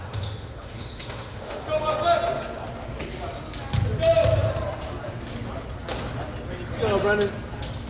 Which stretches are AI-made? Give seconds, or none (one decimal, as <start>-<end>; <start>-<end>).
0.0-1.6